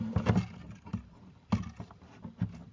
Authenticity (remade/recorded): recorded